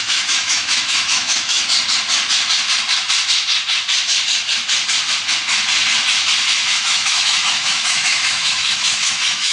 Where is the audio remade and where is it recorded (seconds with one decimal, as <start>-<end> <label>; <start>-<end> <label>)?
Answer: 0.0-1.6 remade; 1.6-6.7 recorded; 6.7-9.5 remade